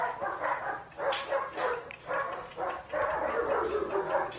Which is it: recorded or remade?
recorded